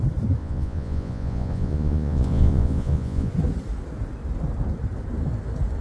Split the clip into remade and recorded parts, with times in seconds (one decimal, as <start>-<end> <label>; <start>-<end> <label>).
0.0-0.4 recorded; 0.4-3.3 remade; 3.3-5.8 recorded